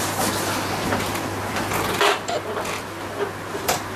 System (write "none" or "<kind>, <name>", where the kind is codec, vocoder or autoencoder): none